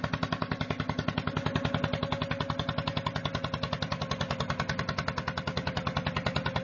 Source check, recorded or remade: recorded